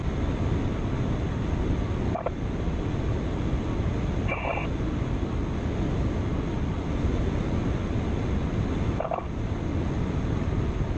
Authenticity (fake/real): real